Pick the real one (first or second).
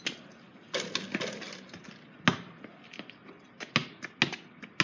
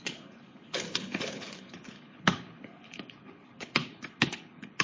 first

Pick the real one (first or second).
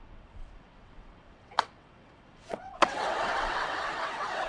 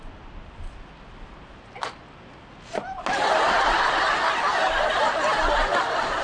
second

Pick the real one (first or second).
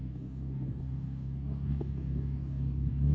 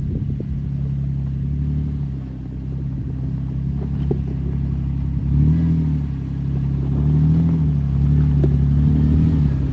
second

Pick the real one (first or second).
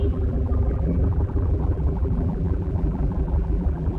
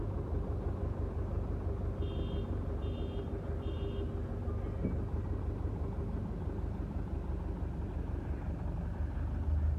second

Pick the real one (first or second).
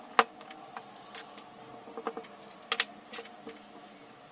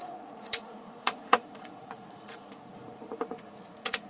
first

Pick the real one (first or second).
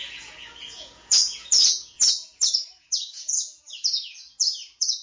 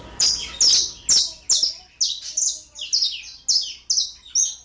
second